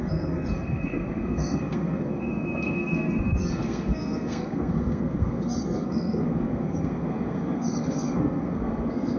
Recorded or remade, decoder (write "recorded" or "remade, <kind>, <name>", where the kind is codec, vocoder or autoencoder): remade, codec, SNAC